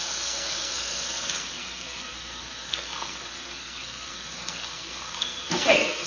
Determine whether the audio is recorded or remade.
remade